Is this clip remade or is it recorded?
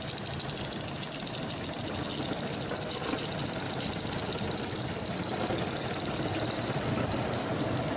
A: recorded